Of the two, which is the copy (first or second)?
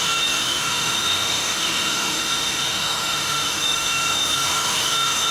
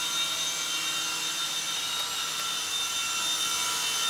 first